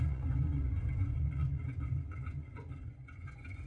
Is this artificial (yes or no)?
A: yes